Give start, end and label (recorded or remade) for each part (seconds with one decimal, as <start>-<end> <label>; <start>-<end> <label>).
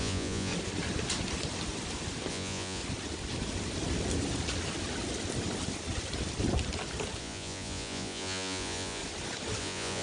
0.0-0.5 remade; 0.5-2.3 recorded; 2.3-2.8 remade; 2.8-7.2 recorded; 7.2-9.0 remade; 9.0-9.6 recorded; 9.6-10.0 remade